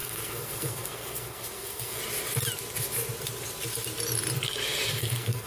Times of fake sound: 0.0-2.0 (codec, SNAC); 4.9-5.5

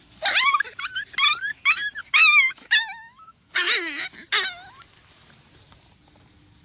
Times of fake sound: 2.0-4.1 (autoencoder, DAC-VAE)

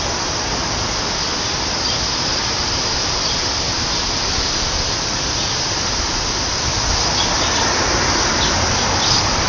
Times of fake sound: 2.3-6.0 (vocoder, BigVGAN v2)

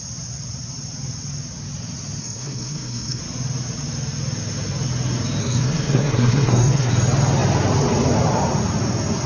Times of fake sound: 2.2-3.2 (codec, SNAC); 5.4-6.9

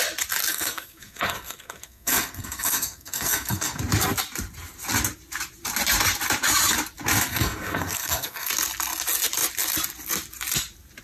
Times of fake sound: 0.5-3.8 (codec, SNAC); 7.3-8.5

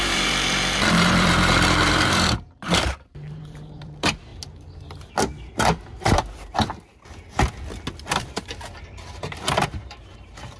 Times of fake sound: 0.0-4.3 (vocoder, BigVGAN v2); 8.1-10.6

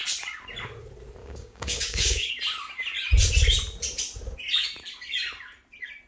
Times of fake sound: 1.2-2.3 (codec, DAC)